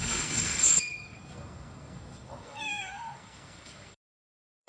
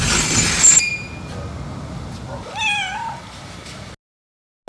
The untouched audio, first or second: second